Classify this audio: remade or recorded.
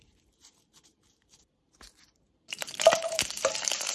remade